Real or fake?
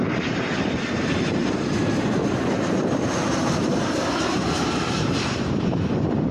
fake